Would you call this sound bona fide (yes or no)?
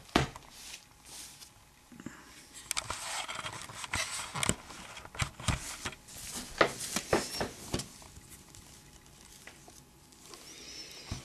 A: yes